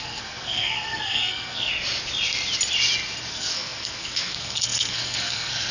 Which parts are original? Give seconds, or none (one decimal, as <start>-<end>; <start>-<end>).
1.7-3.3